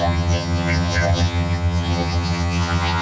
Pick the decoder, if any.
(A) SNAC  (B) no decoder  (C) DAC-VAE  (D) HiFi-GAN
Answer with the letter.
D